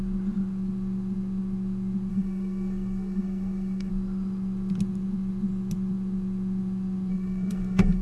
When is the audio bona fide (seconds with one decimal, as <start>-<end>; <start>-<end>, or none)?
0.0-2.1; 3.9-7.1